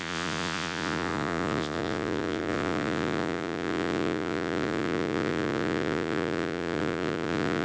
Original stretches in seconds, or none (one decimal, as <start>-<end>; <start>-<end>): none

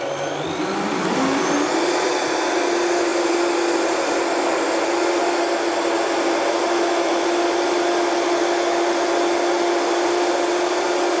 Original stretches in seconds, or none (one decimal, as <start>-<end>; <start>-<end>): 0.0-11.2